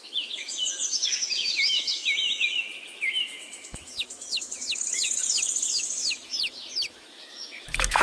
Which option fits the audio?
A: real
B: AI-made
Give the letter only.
B